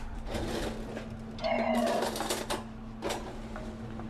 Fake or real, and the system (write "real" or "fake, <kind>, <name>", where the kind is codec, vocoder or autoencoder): real